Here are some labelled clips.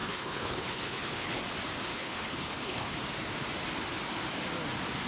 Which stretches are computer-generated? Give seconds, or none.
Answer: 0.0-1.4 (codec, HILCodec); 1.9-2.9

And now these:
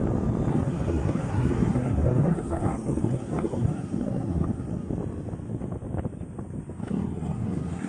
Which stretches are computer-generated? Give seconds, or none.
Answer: 0.5-4.9 (codec, SNAC); 6.8-7.9

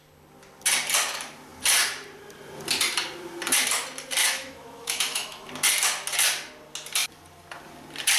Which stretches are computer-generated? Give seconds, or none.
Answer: 4.2-5.5 (autoencoder, DAC-VAE)

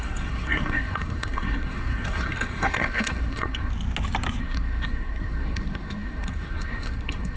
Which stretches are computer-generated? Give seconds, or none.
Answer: 0.0-3.7 (codec, SNAC); 4.4-7.4